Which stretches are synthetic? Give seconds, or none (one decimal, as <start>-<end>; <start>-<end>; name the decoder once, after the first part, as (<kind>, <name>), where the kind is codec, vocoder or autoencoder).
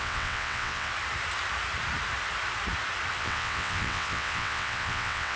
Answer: 0.0-0.9 (vocoder, WaveNeXt); 3.2-5.4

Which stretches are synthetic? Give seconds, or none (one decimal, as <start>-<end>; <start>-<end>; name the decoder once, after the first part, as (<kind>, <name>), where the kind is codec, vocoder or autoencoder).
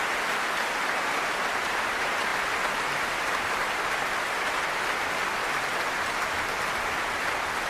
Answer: none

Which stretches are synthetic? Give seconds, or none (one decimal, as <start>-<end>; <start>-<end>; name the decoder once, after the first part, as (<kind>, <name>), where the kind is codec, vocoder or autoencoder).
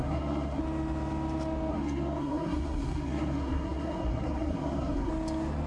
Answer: 0.0-0.6 (codec, SNAC); 1.7-5.1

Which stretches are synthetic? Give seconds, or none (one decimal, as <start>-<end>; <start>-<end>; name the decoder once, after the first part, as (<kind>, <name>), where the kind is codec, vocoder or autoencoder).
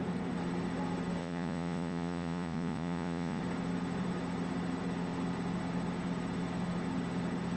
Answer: 1.2-3.4 (vocoder, Vocos)